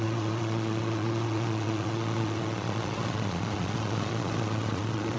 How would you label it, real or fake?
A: fake